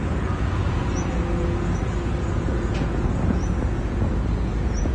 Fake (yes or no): yes